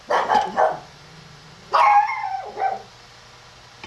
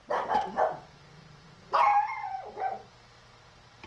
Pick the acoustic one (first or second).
first